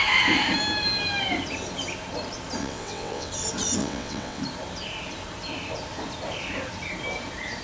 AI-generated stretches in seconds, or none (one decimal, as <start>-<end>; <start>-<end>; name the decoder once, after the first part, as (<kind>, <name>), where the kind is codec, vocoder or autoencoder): 2.6-3.3 (vocoder, WaveNeXt); 3.8-4.4